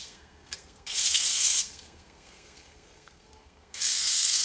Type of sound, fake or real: fake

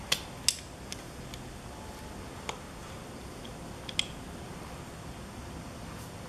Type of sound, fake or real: real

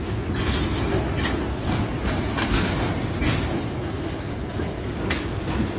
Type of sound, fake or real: real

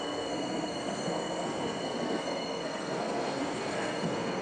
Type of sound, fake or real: fake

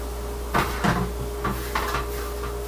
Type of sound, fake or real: real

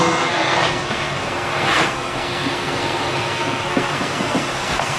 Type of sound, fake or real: fake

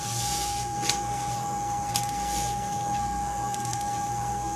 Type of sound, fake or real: fake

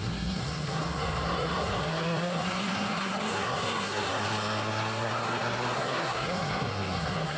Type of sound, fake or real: fake